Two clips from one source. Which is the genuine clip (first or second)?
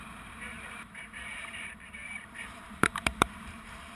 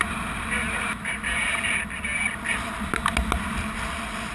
second